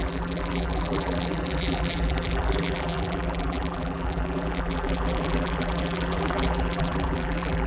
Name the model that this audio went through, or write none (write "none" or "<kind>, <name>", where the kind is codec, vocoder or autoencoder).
vocoder, BigVGAN v2